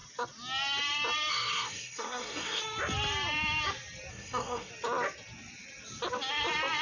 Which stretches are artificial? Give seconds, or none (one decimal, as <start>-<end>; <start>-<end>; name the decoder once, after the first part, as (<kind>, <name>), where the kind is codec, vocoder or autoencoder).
1.3-2.6 (codec, SNAC); 4.1-4.7